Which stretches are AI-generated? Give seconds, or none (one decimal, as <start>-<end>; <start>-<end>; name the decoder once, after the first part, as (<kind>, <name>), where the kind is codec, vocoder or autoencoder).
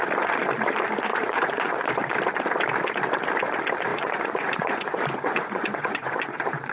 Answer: 1.1-1.9 (vocoder, Vocos); 3.9-6.7